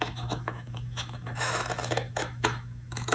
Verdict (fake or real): fake